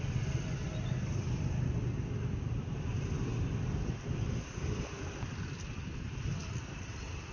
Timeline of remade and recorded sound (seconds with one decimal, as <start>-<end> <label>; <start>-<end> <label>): 0.0-7.3 recorded